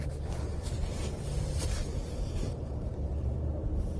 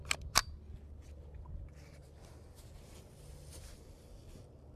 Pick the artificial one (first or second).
first